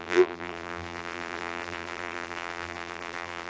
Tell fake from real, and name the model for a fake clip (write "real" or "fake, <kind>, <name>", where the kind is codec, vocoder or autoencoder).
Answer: fake, vocoder, BigVGAN v2